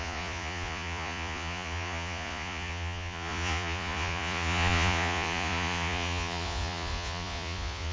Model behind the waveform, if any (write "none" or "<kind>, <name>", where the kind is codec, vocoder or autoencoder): vocoder, Vocos